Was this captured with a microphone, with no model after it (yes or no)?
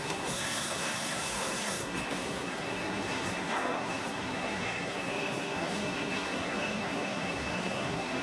no